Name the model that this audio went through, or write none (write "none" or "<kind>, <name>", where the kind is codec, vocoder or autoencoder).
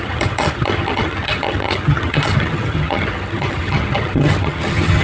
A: vocoder, HiFi-GAN